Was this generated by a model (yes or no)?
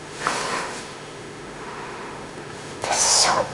yes